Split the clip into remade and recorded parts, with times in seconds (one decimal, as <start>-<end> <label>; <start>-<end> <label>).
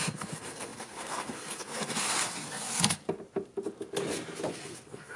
0.0-3.0 remade; 3.0-4.5 recorded; 4.5-5.2 remade